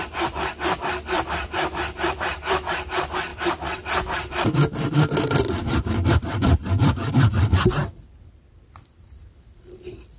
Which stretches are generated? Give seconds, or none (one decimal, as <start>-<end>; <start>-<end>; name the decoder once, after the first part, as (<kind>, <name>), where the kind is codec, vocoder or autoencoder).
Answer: 0.0-10.2 (vocoder, BigVGAN v2)